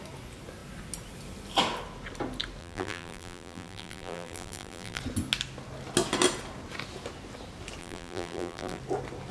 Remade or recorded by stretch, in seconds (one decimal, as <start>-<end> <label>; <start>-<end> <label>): 0.0-2.6 recorded; 2.6-5.0 remade; 5.0-7.8 recorded; 7.8-8.8 remade; 8.8-9.3 recorded